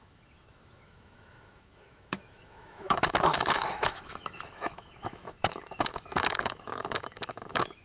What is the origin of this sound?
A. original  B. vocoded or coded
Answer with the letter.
B